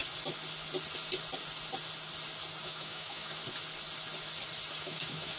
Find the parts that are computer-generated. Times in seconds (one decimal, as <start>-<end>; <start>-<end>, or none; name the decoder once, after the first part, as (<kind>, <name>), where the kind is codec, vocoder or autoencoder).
2.6-3.4 (autoencoder, DAC-VAE); 4.8-5.4